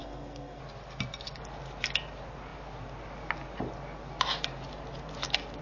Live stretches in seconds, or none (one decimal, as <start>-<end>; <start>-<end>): 0.6-5.6